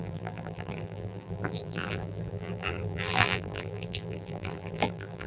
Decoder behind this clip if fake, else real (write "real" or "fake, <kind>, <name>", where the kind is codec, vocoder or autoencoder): fake, vocoder, BigVGAN v2